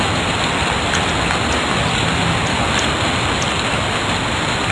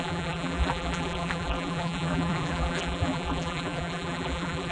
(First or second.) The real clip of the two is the first